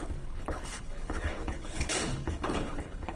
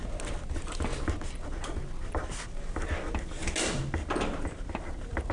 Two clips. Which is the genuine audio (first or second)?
second